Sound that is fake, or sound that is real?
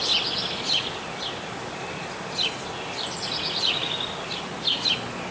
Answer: real